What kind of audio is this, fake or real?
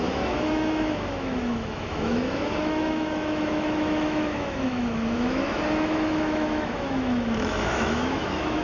fake